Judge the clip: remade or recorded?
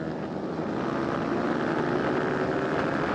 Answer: recorded